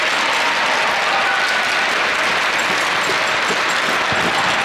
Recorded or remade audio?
recorded